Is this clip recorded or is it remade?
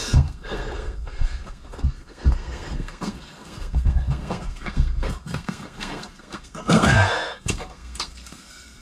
remade